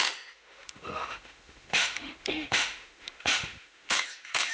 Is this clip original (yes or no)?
no